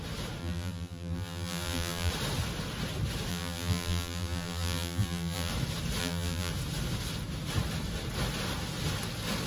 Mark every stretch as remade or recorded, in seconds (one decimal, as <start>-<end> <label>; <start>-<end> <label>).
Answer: 0.0-0.4 recorded; 0.4-2.1 remade; 2.1-3.3 recorded; 3.3-5.5 remade; 5.5-6.0 recorded; 6.0-6.5 remade; 6.5-9.5 recorded